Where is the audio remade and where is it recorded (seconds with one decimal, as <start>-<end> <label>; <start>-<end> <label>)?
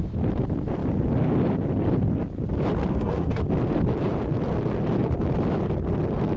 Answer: 0.0-2.9 recorded; 2.9-3.4 remade; 3.4-6.4 recorded